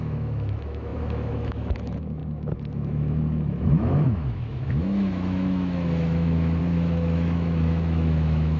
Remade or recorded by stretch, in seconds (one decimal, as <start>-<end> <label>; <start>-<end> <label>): 0.0-8.6 remade